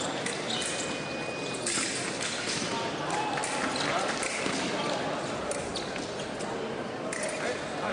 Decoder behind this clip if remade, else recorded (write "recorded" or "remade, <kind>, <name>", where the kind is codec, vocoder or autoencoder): recorded